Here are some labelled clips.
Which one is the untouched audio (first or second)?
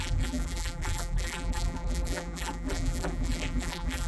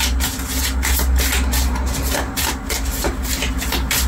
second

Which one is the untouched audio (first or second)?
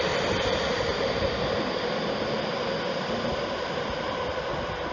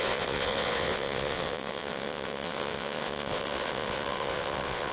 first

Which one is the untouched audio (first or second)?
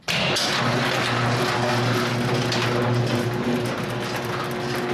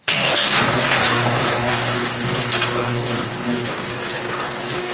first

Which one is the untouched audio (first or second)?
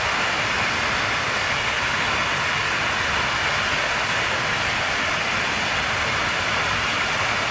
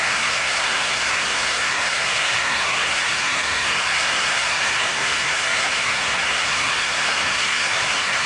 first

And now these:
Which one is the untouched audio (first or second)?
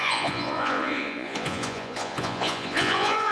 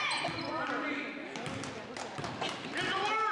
second